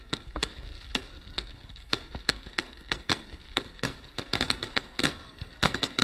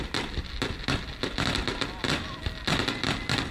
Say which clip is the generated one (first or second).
first